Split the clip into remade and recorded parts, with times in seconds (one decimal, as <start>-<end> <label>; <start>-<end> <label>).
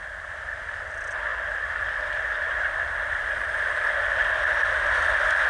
0.0-5.5 recorded